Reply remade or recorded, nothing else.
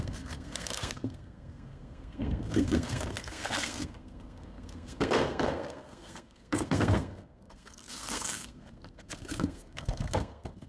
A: remade